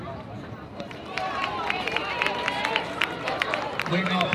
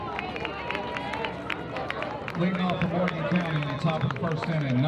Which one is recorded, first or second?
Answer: second